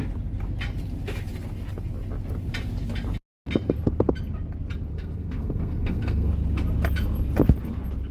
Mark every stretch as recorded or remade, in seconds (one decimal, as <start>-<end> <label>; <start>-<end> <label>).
0.0-4.9 recorded; 4.9-6.3 remade; 6.3-8.1 recorded